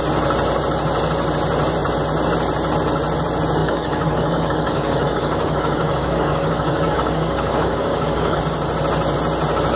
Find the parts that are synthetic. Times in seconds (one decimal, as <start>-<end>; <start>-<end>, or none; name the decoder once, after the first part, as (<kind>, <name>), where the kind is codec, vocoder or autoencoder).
3.6-8.4 (codec, DAC)